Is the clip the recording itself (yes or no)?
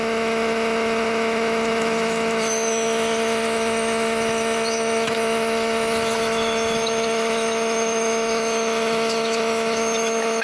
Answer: no